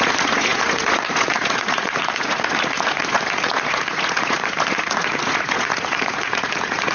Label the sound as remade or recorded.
remade